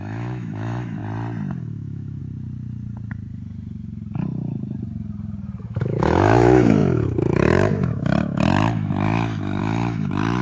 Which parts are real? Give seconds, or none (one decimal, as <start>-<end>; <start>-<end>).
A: 1.0-1.6; 2.2-5.6